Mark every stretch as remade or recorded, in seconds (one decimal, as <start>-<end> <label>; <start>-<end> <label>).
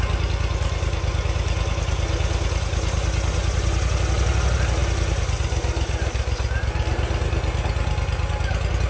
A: 0.0-8.9 recorded